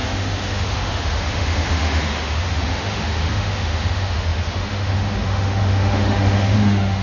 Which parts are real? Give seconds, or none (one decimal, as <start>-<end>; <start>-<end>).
none